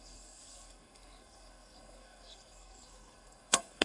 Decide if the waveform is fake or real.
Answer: fake